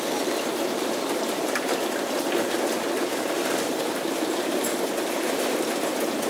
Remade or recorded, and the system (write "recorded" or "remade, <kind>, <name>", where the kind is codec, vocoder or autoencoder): remade, vocoder, BigVGAN v2